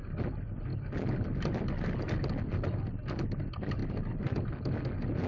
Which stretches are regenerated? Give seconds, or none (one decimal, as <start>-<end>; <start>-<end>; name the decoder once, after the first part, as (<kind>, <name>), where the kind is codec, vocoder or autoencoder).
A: none